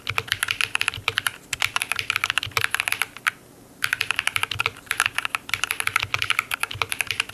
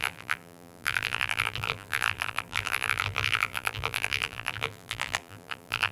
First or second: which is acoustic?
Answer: first